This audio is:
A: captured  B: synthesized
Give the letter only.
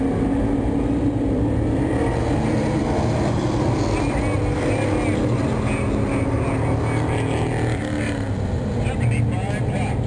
A